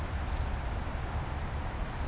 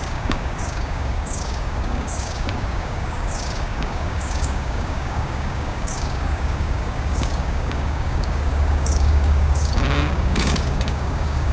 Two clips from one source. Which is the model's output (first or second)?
second